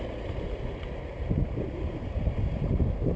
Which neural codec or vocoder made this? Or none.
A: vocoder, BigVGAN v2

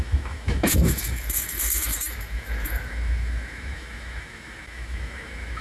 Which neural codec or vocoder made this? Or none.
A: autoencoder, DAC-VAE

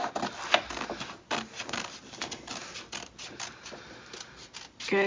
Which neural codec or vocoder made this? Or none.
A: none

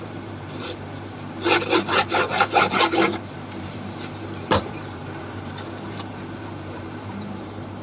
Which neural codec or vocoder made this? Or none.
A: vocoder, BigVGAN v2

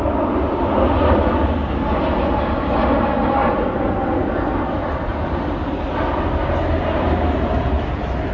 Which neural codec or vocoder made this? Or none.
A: none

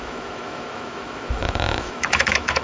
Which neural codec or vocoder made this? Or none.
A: autoencoder, DAC-VAE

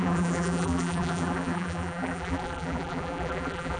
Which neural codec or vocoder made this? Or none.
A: vocoder, BigVGAN v2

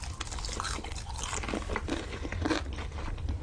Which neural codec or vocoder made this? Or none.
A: none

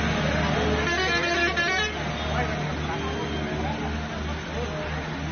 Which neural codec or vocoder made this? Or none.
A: none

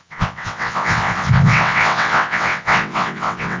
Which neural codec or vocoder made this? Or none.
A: vocoder, WaveNeXt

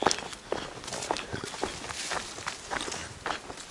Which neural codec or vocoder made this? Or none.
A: none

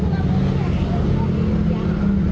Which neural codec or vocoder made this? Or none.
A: none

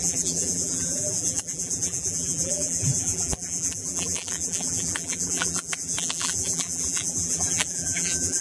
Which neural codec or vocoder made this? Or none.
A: vocoder, BigVGAN v2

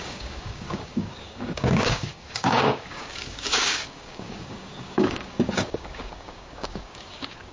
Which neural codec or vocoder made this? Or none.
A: codec, DAC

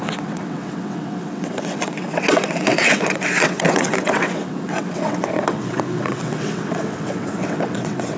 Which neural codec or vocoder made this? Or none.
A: vocoder, WaveNeXt